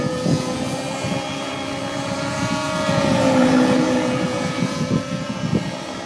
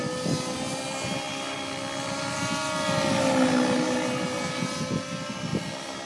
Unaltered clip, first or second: second